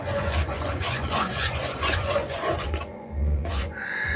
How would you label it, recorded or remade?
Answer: remade